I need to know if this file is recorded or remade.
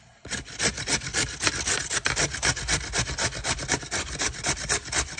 recorded